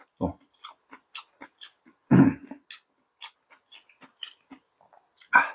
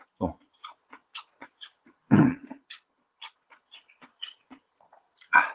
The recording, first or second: first